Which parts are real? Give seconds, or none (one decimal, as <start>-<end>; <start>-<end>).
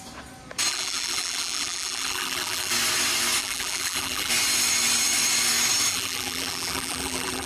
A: 0.0-0.7; 2.7-3.4; 4.3-5.9